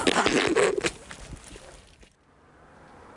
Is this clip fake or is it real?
real